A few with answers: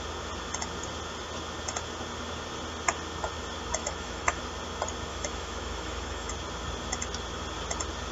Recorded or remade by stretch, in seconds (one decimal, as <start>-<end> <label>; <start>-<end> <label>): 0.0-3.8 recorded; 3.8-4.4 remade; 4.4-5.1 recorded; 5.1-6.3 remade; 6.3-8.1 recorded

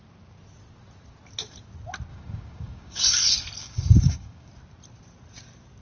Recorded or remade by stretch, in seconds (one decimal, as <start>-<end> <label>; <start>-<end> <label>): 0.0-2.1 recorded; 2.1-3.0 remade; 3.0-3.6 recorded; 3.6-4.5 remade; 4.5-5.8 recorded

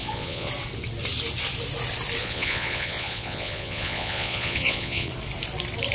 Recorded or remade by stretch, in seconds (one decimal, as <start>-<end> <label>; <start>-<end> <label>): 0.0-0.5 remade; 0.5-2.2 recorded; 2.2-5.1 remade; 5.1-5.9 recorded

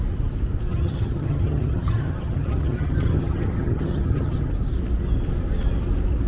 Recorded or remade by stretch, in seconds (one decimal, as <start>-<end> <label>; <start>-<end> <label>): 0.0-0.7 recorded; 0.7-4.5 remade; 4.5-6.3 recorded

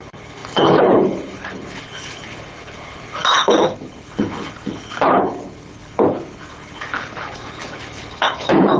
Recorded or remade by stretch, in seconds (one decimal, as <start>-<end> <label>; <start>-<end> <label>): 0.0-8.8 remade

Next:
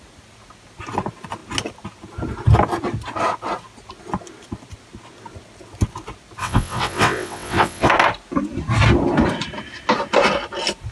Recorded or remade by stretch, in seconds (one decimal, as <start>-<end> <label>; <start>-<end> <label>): 0.0-6.4 recorded; 6.4-7.9 remade; 7.9-10.9 recorded

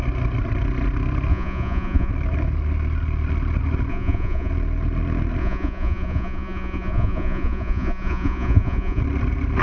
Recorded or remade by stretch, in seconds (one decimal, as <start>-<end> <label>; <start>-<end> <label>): 0.0-1.3 recorded; 1.3-2.1 remade; 2.1-3.9 recorded; 3.9-4.5 remade; 4.5-5.4 recorded; 5.4-9.0 remade; 9.0-9.6 recorded